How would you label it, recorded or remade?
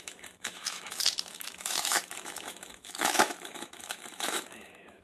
remade